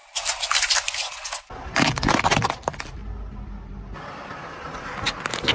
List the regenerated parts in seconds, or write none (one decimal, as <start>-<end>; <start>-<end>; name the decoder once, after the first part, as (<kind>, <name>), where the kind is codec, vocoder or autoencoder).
none

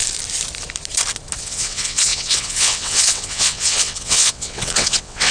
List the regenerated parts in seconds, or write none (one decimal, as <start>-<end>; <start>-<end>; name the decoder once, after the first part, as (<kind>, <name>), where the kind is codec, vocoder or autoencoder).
1.4-5.3 (vocoder, WaveNeXt)